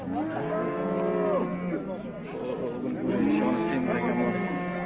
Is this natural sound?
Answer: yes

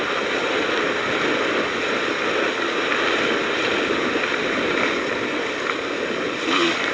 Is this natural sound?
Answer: yes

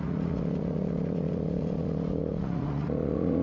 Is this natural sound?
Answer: no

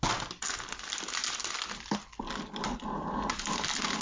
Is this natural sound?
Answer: yes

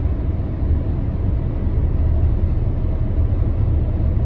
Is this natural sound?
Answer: yes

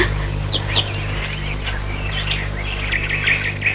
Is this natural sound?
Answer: yes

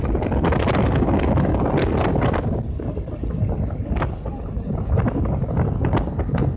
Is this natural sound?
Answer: yes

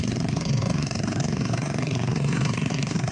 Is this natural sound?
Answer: no